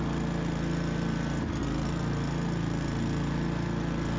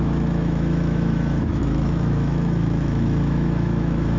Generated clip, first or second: second